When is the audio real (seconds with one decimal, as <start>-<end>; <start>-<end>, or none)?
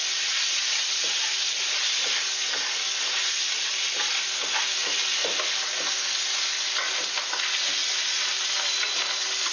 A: 0.0-9.5